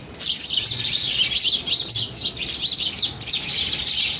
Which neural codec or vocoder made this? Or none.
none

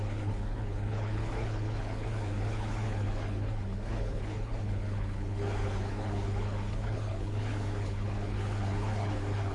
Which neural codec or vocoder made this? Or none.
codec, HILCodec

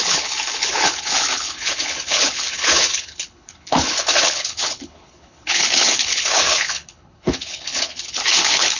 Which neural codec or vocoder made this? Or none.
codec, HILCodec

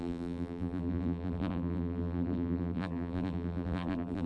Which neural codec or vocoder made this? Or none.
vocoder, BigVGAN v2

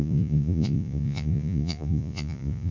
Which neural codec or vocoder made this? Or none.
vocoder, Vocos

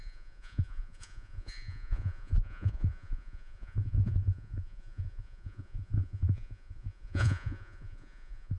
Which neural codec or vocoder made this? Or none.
vocoder, Vocos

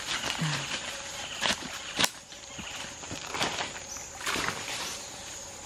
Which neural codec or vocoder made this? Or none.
none